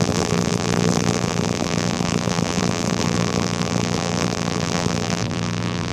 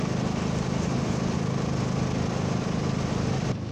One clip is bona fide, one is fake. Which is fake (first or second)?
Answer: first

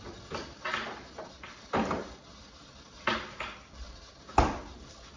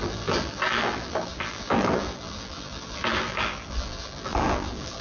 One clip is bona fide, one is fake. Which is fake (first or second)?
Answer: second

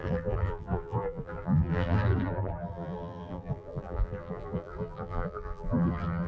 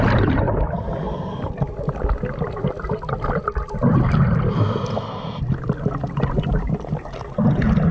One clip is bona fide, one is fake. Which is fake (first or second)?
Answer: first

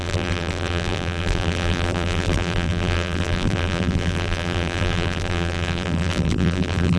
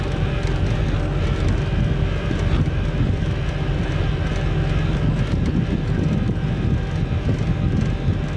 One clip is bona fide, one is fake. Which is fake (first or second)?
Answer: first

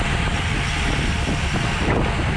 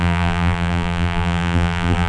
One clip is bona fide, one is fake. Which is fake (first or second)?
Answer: second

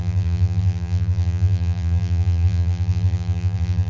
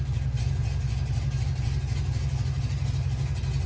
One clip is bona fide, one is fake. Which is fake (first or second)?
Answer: first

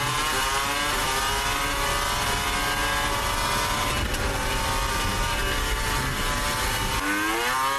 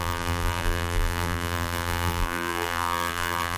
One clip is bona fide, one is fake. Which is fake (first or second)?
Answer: second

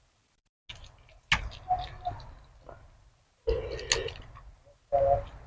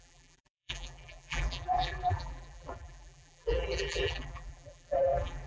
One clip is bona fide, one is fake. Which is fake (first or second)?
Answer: second